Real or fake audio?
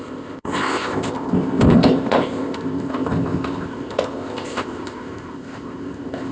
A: fake